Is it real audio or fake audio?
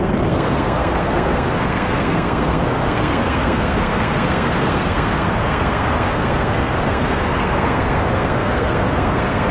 fake